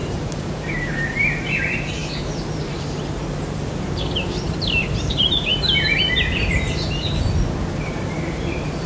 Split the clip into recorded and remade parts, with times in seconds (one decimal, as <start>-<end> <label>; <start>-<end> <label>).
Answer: 0.0-5.5 remade; 5.5-7.8 recorded; 7.8-8.9 remade